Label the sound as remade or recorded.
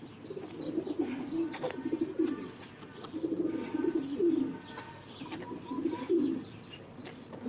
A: recorded